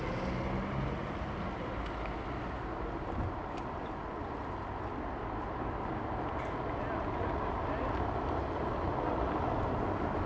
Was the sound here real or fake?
real